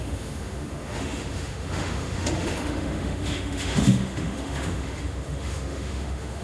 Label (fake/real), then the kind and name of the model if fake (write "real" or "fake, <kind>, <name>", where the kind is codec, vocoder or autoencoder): fake, autoencoder, DAC-VAE